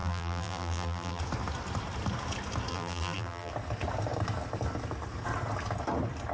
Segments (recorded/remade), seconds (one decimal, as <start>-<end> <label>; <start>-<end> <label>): 0.0-1.2 remade; 1.2-2.7 recorded; 2.7-3.5 remade; 3.5-6.3 recorded

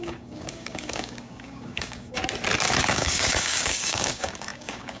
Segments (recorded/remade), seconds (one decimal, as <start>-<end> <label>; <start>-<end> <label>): 0.0-2.2 remade; 2.2-2.9 recorded; 2.9-5.0 remade

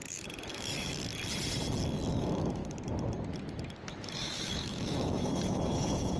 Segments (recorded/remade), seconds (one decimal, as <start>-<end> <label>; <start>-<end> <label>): 0.0-0.5 recorded; 0.5-1.1 remade; 1.1-2.1 recorded; 2.1-2.6 remade; 2.6-3.9 recorded; 3.9-6.2 remade